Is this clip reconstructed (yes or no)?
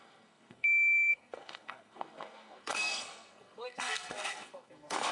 yes